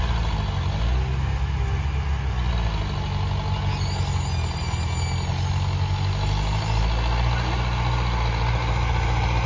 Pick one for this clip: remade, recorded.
recorded